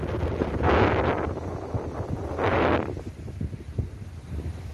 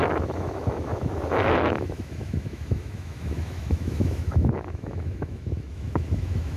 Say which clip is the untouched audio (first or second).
first